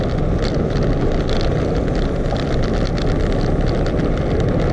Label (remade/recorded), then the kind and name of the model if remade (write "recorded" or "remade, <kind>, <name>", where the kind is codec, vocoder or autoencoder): recorded